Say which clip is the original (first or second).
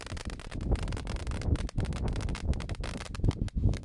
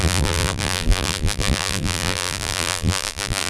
first